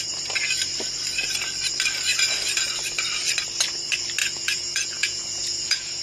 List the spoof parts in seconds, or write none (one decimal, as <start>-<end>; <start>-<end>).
4.2-6.0